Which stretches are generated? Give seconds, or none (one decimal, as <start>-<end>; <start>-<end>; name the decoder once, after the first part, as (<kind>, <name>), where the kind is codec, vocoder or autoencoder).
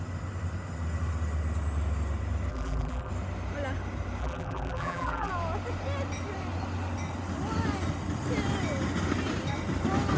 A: 2.5-3.1 (vocoder, BigVGAN v2); 4.2-5.3